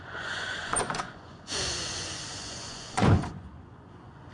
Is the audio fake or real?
fake